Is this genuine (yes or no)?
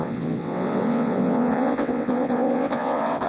no